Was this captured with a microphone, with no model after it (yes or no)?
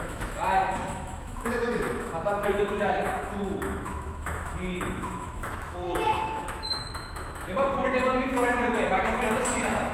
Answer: no